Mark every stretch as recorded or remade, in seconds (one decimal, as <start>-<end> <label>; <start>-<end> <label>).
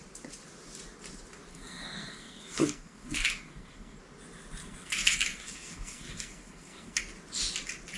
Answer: 0.0-1.5 recorded; 1.5-4.0 remade; 4.0-4.6 recorded; 4.6-7.0 remade; 7.0-8.0 recorded